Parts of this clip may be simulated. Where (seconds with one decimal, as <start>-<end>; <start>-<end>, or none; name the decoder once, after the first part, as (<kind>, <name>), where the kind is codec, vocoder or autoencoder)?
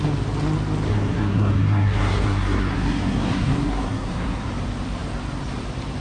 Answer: 0.9-4.5 (codec, SNAC)